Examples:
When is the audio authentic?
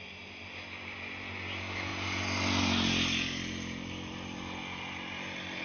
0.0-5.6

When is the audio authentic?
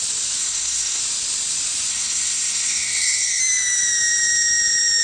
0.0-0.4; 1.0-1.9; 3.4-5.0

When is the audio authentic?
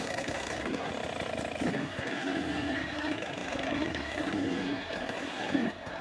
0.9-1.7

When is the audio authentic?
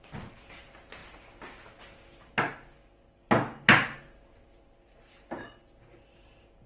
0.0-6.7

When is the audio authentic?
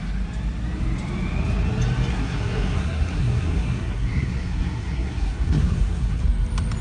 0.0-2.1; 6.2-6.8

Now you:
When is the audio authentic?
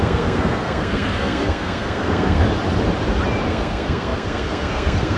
2.4-3.5